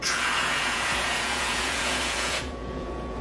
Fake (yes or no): yes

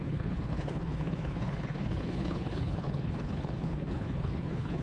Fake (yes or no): yes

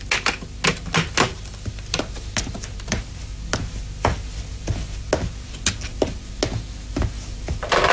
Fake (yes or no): no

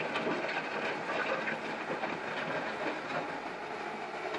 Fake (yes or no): no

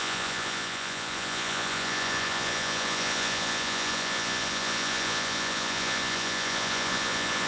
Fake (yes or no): yes